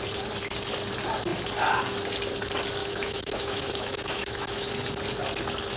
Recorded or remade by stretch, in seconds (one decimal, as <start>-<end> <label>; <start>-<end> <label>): 0.0-2.8 recorded; 2.8-4.7 remade; 4.7-5.8 recorded